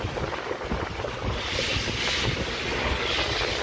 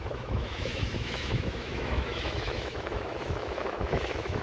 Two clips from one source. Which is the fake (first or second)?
second